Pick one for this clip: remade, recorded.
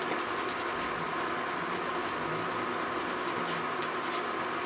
recorded